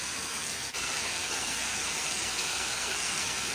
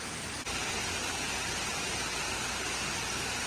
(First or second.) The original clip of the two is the second